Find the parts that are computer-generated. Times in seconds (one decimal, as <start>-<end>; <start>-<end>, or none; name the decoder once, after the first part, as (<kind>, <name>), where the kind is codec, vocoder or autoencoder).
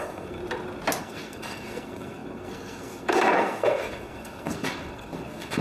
0.0-0.4 (codec, SNAC); 1.0-5.6